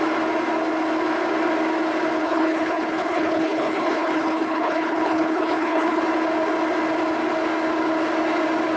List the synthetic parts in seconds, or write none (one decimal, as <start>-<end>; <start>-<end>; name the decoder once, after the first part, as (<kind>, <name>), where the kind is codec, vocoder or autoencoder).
2.2-6.0 (codec, HILCodec)